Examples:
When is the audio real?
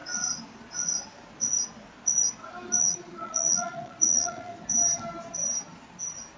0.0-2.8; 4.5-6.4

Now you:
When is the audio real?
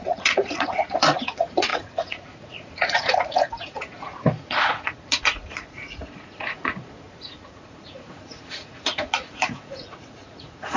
none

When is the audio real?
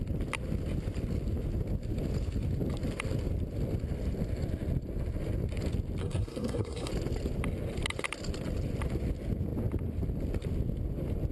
0.0-6.0; 6.9-11.3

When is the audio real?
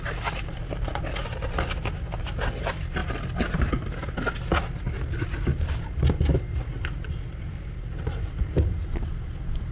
0.0-3.0; 3.9-5.5; 8.8-9.7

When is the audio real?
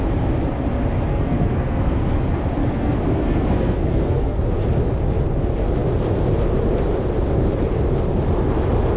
0.0-1.1; 2.2-2.6; 4.4-9.0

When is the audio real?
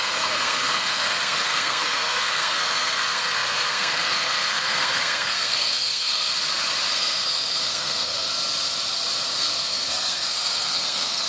6.3-6.9; 8.3-9.3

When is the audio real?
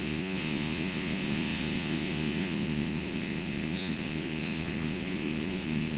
none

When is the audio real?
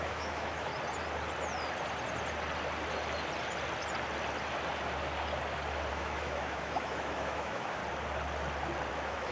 0.7-5.9; 7.8-8.9